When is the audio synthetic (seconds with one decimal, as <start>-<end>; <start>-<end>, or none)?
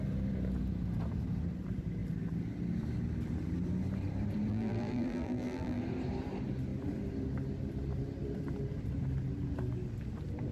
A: 4.5-5.8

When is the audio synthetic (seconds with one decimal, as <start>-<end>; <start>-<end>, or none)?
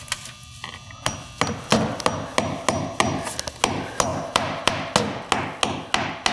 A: none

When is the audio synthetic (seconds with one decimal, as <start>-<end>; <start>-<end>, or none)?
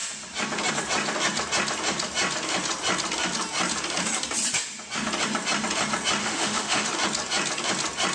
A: 6.2-6.9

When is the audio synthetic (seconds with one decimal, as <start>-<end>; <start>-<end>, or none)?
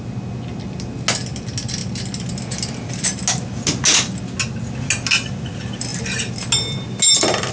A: none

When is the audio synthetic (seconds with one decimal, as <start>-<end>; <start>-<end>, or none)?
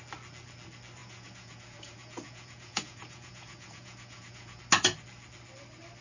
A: 1.0-4.6